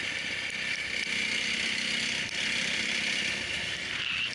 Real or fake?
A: real